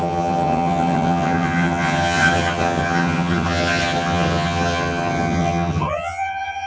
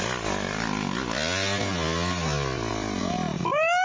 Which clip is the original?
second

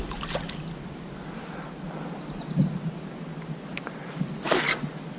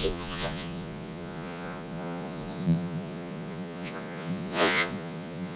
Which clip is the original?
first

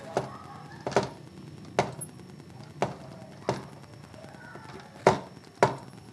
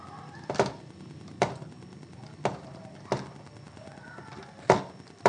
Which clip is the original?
first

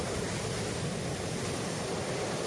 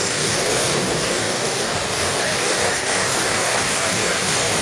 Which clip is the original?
first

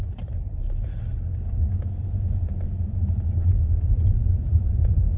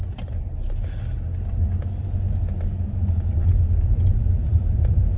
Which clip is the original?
second